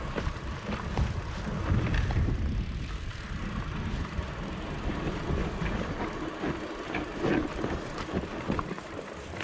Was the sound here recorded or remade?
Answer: recorded